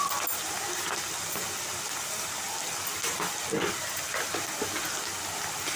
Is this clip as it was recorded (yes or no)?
yes